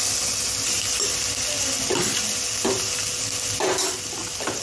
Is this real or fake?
real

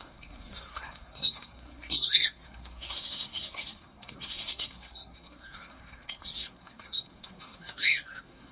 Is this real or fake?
fake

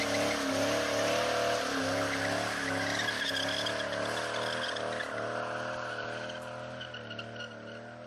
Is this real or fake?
real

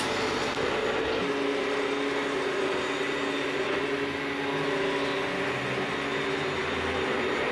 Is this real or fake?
real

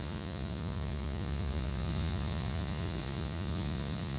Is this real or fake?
fake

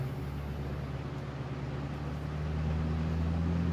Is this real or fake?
real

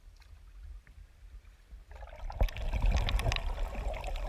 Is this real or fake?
real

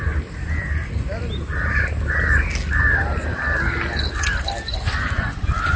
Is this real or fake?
real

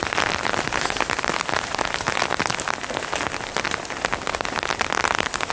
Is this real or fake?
real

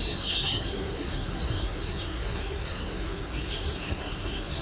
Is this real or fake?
fake